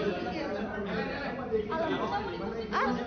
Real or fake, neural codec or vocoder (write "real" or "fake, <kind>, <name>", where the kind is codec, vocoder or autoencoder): real